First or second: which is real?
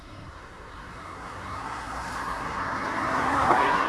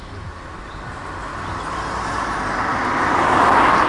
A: second